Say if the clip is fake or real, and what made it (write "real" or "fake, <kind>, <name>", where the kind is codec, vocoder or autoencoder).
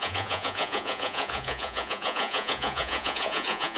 fake, vocoder, Vocos